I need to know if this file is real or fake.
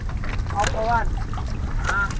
real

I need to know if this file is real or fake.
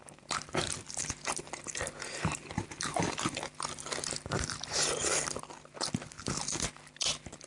real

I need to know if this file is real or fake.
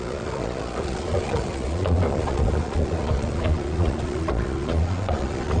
fake